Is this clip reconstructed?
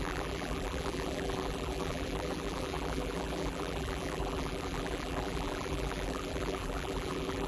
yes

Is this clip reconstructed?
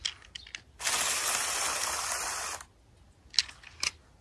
no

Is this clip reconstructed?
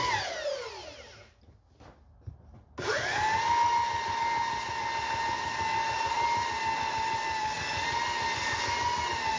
no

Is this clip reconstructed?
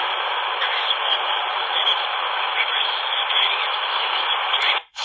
yes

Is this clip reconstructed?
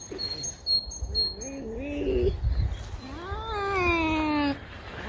no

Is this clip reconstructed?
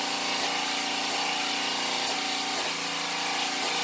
no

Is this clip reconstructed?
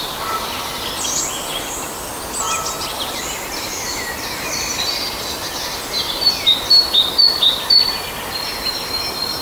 no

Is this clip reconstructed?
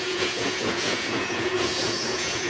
yes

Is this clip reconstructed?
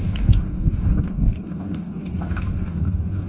yes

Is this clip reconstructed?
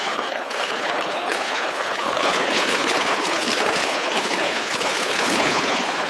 yes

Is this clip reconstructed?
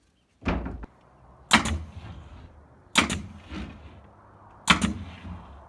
no